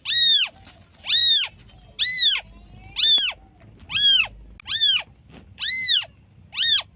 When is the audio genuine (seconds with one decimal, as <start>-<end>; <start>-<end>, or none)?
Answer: 0.0-7.0